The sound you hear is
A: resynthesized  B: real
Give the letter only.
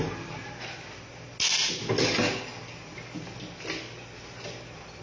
B